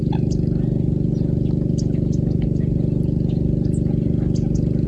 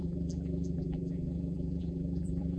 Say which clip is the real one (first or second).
first